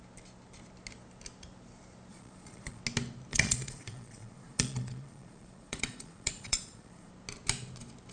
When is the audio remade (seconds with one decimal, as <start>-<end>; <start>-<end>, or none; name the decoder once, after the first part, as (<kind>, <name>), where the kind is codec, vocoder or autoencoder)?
2.1-2.8 (vocoder, Vocos); 3.3-7.1